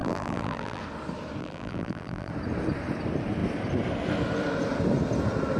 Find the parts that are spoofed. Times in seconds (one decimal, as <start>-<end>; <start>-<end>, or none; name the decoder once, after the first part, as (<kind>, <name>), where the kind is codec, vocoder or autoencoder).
0.0-0.8 (vocoder, BigVGAN v2); 1.4-2.3

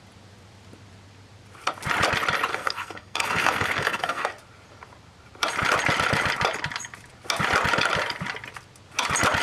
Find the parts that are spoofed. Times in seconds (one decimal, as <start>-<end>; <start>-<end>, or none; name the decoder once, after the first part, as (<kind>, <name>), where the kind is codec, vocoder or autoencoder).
2.5-4.3 (codec, SNAC)

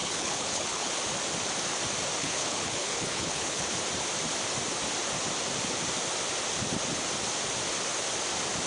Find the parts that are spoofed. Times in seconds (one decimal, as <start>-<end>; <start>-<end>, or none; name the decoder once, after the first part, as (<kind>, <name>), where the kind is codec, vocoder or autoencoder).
0.0-0.9 (codec, HILCodec); 2.2-3.7

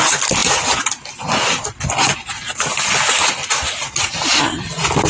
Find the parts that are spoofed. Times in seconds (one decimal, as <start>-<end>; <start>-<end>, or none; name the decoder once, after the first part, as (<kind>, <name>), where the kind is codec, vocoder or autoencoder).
none

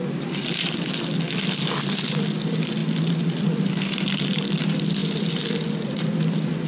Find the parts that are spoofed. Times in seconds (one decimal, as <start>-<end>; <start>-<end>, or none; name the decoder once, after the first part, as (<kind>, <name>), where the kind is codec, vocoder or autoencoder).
none